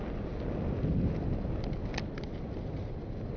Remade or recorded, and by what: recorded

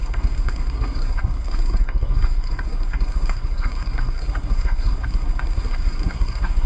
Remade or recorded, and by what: remade, codec, SNAC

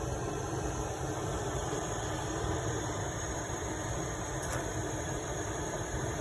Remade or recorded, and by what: remade, vocoder, BigVGAN v2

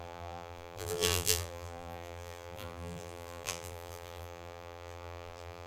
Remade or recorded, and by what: remade, vocoder, BigVGAN v2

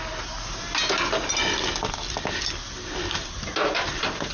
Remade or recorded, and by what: recorded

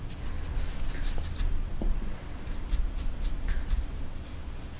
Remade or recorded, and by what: recorded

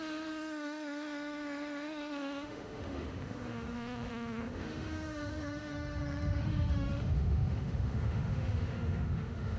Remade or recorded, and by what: remade, autoencoder, DAC-VAE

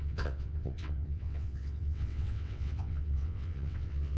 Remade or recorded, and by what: remade, vocoder, WaveNeXt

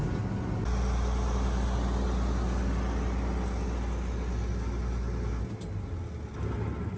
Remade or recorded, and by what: recorded